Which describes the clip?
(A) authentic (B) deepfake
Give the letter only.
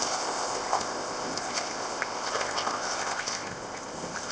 B